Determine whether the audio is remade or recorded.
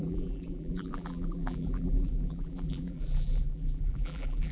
remade